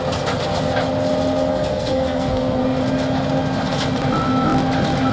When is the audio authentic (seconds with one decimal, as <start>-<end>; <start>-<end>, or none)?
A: 0.0-1.5; 2.6-5.1